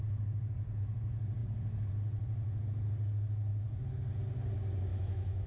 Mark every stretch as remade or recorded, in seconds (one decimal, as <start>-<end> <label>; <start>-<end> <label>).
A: 0.0-4.9 recorded; 4.9-5.5 remade

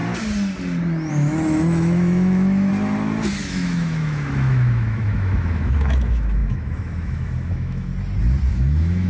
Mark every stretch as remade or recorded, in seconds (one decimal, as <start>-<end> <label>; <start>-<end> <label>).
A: 0.0-1.1 recorded; 1.1-2.7 remade; 2.7-3.4 recorded; 3.4-7.9 remade; 7.9-8.5 recorded; 8.5-9.1 remade

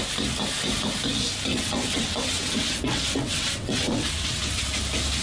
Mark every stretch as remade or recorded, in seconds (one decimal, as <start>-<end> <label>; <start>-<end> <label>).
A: 0.0-1.5 recorded; 1.5-4.6 remade; 4.6-5.2 recorded

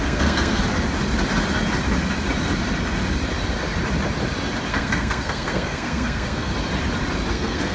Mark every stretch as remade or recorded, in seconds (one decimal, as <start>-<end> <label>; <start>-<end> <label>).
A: 0.0-0.6 remade; 0.6-4.7 recorded; 4.7-6.5 remade; 6.5-7.3 recorded; 7.3-7.7 remade

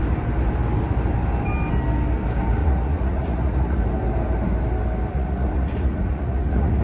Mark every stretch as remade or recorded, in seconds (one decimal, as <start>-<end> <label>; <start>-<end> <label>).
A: 0.0-2.6 recorded; 2.6-3.8 remade; 3.8-5.1 recorded; 5.1-6.8 remade

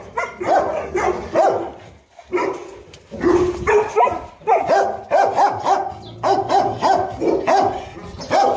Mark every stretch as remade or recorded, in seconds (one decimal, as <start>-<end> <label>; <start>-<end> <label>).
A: 0.0-8.6 recorded

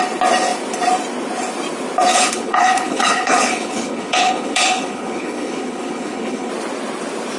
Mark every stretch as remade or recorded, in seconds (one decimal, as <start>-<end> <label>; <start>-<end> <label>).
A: 0.0-2.1 recorded; 2.1-6.5 remade; 6.5-7.4 recorded